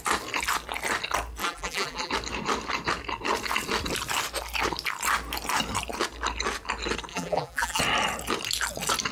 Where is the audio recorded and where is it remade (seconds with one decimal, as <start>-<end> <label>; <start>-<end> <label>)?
0.0-1.4 recorded; 1.4-2.1 remade; 2.1-7.1 recorded; 7.1-7.8 remade; 7.8-9.1 recorded

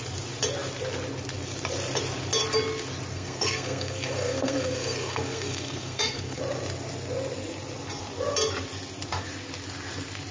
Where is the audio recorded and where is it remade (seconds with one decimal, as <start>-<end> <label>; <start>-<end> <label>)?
0.0-3.1 recorded; 3.1-6.4 remade; 6.4-10.3 recorded